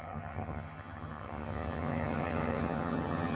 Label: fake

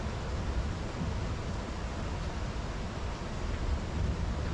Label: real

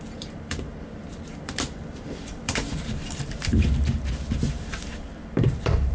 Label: fake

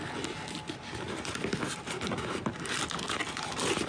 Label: real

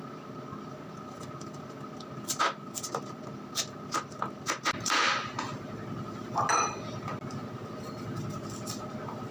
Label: real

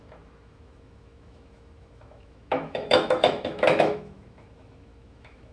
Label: fake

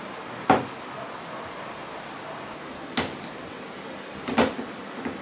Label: real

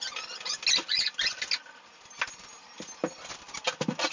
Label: real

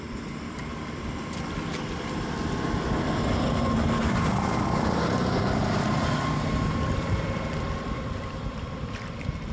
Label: fake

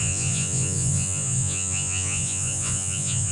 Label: fake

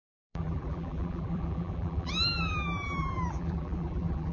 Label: fake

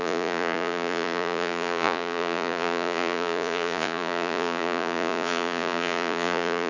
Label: fake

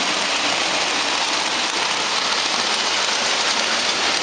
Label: real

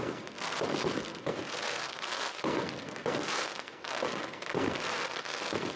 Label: fake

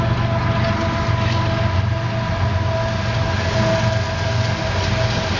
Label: real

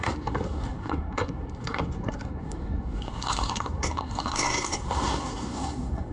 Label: fake